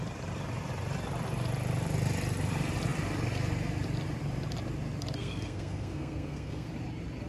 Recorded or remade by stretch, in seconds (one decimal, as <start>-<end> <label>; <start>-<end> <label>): 0.0-5.2 recorded; 5.2-6.7 remade; 6.7-7.3 recorded